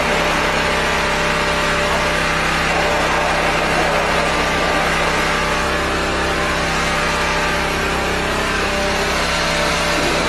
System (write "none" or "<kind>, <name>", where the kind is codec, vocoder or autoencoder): none